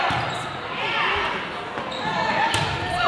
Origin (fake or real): real